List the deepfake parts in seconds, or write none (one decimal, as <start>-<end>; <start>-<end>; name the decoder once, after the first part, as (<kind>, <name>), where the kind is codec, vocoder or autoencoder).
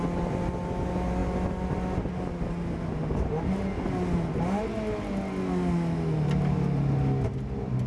none